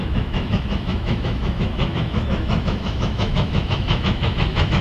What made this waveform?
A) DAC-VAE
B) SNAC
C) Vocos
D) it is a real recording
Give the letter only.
A